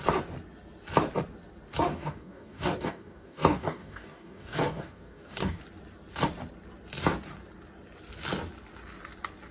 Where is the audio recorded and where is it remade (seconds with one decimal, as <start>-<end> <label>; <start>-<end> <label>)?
0.0-1.9 recorded; 1.9-5.6 remade; 5.6-9.5 recorded